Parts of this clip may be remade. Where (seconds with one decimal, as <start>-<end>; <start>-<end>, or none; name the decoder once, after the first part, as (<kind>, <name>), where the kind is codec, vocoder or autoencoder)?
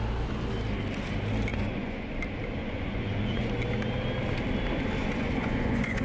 1.5-2.1 (vocoder, Vocos); 2.6-3.5; 5.0-6.0